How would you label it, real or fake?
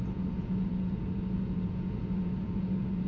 fake